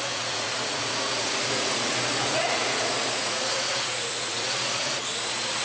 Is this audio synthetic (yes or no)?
yes